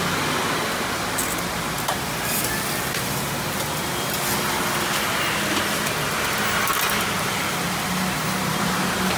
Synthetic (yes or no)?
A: no